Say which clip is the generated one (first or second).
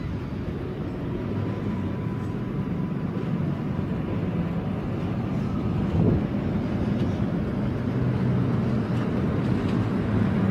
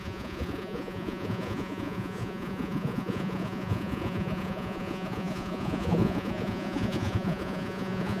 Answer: second